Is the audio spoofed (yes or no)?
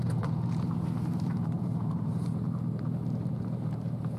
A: yes